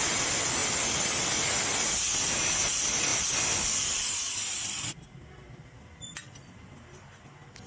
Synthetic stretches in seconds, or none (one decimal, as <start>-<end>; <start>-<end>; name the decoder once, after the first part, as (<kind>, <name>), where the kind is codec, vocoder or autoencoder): none